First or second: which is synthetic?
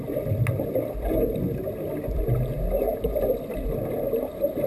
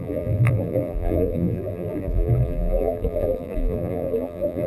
second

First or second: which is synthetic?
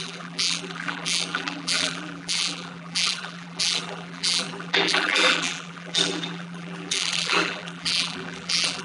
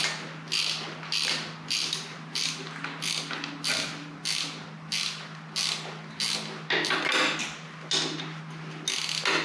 first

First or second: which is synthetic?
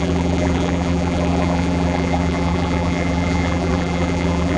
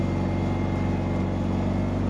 first